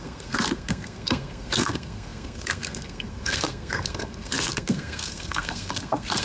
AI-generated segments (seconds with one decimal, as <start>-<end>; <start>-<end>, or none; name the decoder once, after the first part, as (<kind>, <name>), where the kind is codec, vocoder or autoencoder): 0.0-6.2 (codec, SNAC)